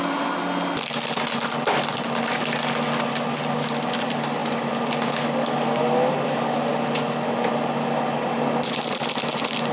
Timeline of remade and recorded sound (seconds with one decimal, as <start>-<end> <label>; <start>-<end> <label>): 0.0-9.7 recorded